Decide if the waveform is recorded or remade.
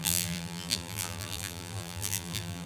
remade